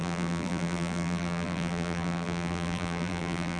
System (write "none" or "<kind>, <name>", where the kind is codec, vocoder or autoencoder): vocoder, BigVGAN v2